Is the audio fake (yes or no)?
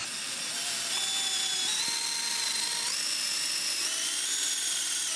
no